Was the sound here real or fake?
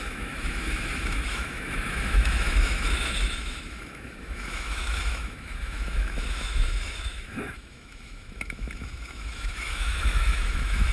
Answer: fake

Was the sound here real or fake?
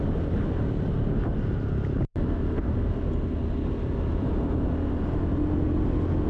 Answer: real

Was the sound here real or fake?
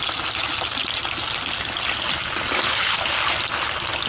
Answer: real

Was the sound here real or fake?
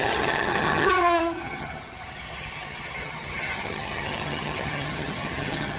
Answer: fake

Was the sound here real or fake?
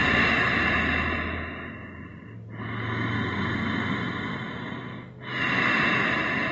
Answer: real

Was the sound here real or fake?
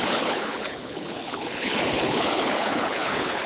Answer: fake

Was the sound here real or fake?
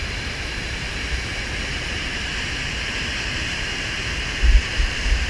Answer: fake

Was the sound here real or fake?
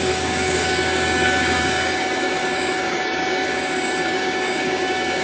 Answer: fake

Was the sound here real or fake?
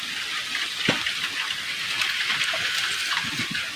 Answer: real